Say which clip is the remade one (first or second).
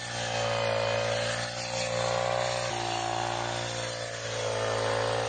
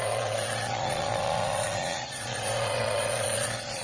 second